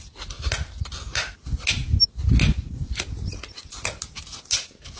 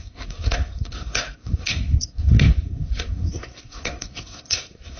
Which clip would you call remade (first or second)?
second